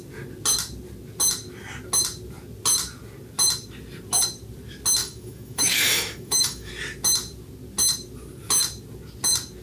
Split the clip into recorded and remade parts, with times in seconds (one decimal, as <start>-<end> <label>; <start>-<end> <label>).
0.0-5.0 recorded; 5.0-6.7 remade; 6.7-9.6 recorded